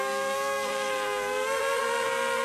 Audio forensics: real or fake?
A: fake